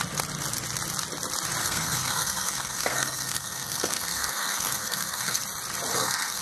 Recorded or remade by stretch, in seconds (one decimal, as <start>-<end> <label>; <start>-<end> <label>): 0.0-1.6 recorded; 1.6-5.4 remade; 5.4-5.9 recorded; 5.9-6.4 remade